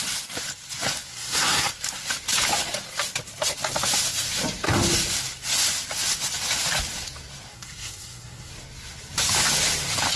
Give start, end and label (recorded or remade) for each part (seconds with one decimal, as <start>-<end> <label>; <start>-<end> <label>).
0.0-1.1 recorded; 1.1-1.7 remade; 1.7-7.5 recorded; 7.5-8.5 remade; 8.5-10.2 recorded